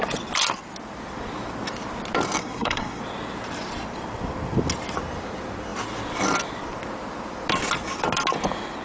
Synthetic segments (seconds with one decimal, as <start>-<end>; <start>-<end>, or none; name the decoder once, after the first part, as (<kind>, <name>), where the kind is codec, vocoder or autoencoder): 2.4-3.0 (codec, SNAC)